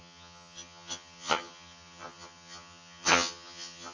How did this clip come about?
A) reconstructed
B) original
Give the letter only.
A